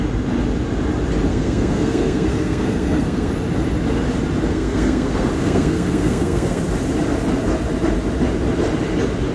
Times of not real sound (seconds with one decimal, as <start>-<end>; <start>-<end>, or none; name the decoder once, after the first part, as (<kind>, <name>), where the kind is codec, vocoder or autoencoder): 1.3-3.3 (codec, SNAC); 4.5-6.6